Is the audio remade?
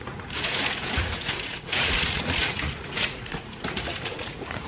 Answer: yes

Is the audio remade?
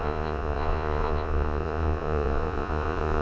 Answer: yes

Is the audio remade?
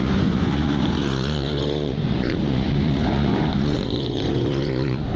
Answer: yes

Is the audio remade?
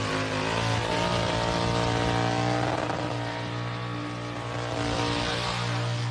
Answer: no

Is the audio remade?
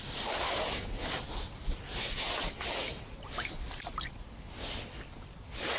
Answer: no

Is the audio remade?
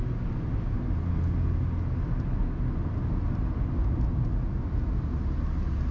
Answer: no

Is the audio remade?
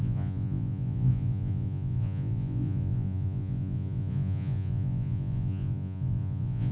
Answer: yes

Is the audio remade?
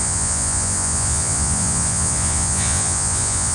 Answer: yes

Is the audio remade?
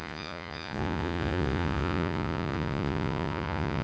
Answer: yes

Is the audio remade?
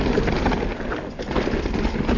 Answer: no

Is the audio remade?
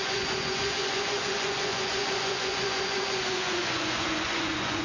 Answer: yes